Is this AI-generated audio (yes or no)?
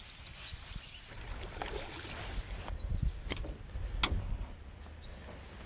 no